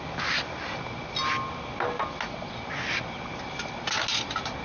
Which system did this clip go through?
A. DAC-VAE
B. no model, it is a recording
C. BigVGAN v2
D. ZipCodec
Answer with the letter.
B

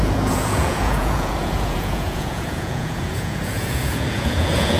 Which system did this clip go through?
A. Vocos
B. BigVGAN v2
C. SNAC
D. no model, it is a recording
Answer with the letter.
A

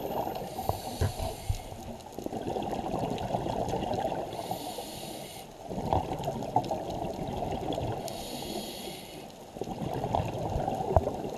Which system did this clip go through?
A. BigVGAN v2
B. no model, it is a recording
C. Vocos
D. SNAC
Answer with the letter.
B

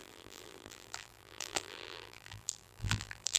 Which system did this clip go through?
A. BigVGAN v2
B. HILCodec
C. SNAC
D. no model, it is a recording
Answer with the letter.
A